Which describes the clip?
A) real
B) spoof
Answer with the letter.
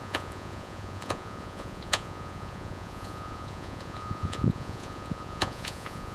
B